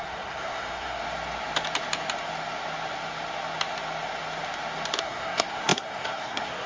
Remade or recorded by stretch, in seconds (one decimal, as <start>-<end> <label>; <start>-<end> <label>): 0.0-1.0 remade; 1.0-5.0 recorded; 5.0-6.7 remade